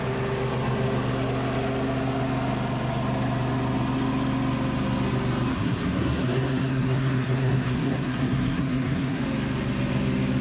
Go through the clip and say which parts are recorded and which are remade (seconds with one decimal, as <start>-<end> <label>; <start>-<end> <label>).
0.0-5.5 recorded; 5.5-9.2 remade; 9.2-10.4 recorded